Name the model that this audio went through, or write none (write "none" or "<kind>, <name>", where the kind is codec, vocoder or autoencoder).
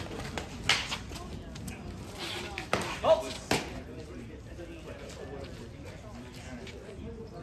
none